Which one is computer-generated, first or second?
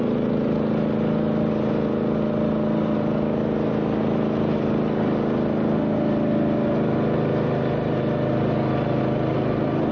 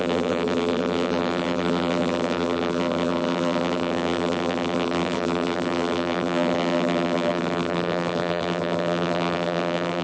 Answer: second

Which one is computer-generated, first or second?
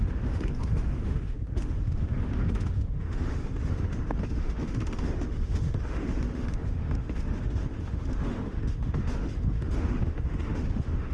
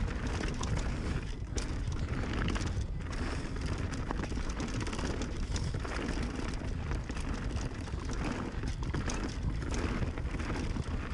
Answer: first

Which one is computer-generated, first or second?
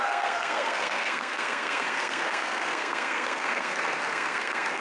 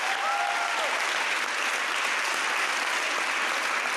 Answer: first